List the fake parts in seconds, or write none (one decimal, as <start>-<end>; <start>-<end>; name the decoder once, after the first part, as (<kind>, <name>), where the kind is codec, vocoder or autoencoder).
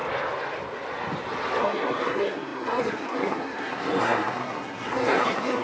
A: 1.6-5.6 (codec, SNAC)